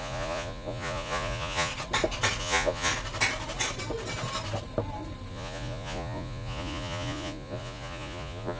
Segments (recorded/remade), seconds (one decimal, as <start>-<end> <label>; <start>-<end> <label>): 0.0-1.7 remade; 1.7-2.4 recorded; 2.4-2.9 remade; 2.9-5.3 recorded; 5.3-8.6 remade